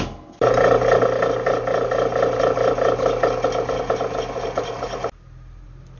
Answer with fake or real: real